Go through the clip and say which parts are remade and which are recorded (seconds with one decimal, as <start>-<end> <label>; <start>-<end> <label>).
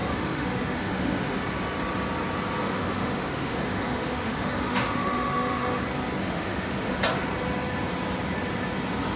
0.0-1.4 remade; 1.4-2.6 recorded; 2.6-5.8 remade; 5.8-6.2 recorded; 6.2-7.0 remade; 7.0-9.2 recorded